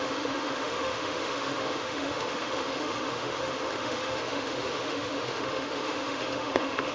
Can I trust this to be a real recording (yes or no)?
no